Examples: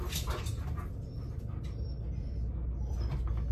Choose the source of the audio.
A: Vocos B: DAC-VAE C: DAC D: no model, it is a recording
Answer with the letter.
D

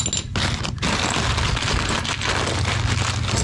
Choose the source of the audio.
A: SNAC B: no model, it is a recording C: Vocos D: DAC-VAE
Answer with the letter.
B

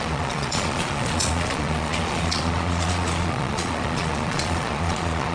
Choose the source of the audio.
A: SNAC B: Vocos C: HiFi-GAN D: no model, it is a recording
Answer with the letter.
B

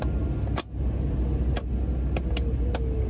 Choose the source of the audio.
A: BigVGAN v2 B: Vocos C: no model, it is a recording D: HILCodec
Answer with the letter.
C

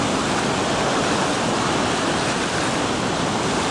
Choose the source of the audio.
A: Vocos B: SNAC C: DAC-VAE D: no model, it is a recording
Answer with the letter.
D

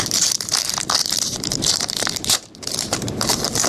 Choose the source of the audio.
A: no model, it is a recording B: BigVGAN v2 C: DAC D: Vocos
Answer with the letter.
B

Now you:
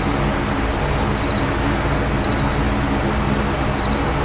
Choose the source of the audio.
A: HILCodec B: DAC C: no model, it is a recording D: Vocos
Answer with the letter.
C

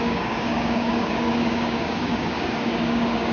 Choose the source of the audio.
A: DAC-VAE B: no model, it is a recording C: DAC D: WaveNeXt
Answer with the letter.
C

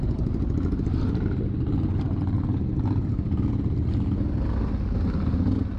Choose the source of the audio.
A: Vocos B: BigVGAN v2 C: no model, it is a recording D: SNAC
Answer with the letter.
C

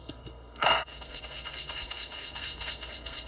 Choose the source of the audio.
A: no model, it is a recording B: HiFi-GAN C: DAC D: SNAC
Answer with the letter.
D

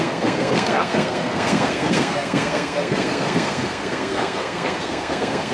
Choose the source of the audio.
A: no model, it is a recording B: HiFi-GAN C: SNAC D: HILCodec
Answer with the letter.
C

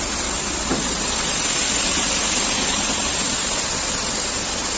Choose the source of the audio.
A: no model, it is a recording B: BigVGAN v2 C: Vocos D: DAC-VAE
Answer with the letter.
A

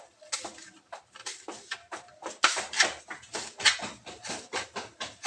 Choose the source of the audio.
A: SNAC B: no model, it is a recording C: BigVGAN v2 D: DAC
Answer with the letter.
B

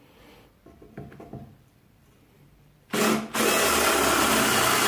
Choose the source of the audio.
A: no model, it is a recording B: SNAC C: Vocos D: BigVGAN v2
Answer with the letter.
D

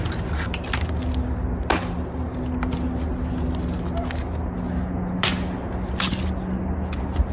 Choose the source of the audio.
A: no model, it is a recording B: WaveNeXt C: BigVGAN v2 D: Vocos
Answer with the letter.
A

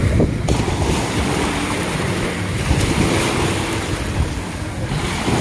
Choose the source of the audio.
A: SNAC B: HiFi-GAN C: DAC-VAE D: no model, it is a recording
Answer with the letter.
D